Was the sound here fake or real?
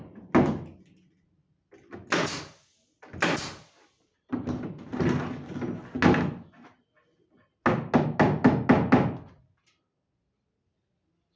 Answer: real